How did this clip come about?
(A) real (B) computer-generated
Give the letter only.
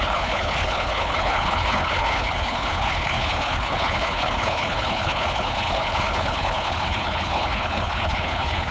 B